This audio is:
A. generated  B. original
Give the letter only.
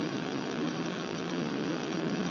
A